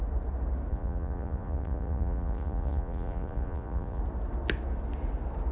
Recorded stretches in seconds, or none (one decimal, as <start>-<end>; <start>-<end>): 0.0-0.7; 4.0-5.5

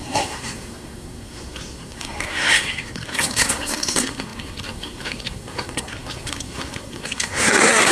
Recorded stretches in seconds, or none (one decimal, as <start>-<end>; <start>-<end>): none

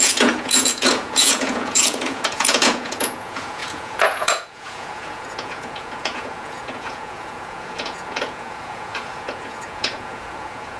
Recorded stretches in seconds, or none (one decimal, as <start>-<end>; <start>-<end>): none

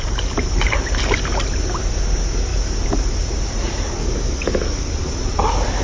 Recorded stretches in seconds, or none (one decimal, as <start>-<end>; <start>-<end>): 0.0-4.0; 4.8-5.8

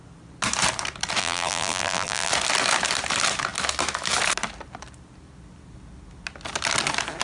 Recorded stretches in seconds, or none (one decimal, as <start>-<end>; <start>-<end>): 0.0-1.2; 2.3-7.2

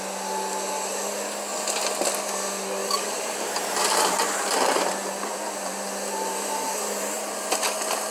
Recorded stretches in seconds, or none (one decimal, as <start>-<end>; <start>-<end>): 0.0-2.8; 7.5-8.1